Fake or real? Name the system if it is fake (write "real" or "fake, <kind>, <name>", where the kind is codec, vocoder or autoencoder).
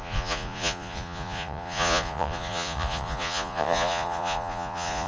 fake, vocoder, Vocos